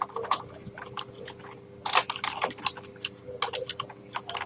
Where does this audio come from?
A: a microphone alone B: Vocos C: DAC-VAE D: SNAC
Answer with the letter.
A